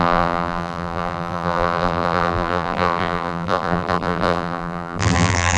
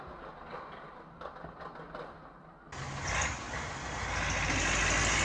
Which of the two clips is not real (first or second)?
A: first